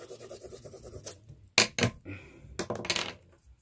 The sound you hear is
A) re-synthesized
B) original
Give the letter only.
B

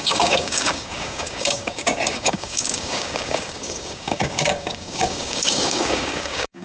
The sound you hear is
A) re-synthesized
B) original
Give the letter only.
A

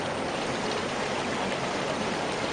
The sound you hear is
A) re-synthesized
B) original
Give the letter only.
B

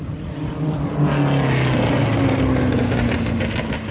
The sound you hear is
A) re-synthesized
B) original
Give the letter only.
B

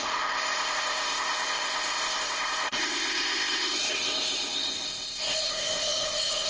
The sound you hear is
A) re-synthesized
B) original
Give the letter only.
A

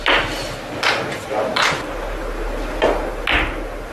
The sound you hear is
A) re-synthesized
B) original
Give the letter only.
B